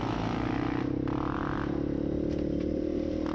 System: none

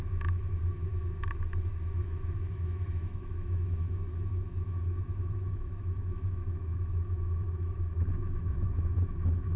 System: autoencoder, DAC-VAE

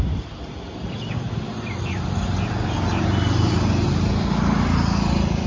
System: none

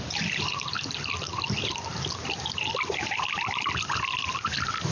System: none